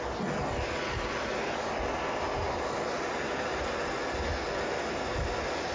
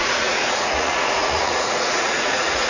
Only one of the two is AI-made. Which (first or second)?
second